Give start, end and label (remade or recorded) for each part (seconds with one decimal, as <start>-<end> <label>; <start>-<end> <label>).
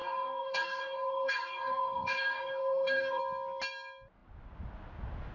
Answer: 0.0-3.2 remade; 3.2-5.3 recorded